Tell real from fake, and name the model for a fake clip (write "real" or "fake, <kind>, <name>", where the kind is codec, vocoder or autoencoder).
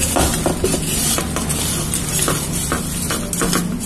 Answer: real